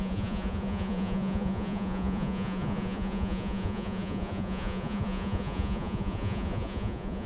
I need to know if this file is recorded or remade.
remade